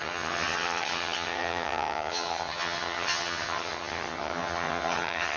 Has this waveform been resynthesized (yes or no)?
yes